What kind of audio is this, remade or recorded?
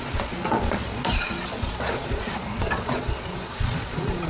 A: remade